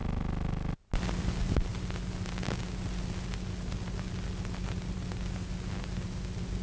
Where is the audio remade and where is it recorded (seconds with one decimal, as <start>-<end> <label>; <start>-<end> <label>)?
0.0-6.6 recorded